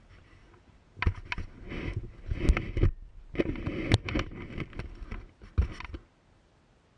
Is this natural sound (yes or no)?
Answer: yes